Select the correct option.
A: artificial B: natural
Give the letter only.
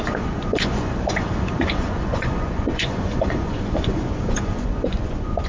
A